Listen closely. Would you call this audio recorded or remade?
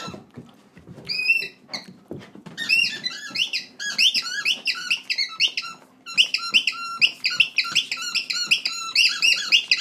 recorded